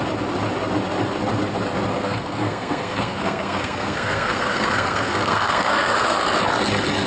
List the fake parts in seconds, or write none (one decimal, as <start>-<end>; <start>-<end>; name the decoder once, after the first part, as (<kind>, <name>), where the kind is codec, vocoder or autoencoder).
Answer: 1.9-6.2 (codec, SNAC)